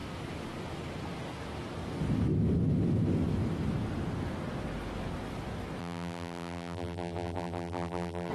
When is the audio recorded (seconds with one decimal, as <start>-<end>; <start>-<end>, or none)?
0.0-5.8